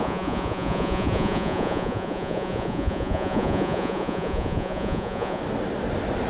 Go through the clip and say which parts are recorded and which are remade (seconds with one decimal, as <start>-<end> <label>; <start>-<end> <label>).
0.0-5.4 remade; 5.4-6.3 recorded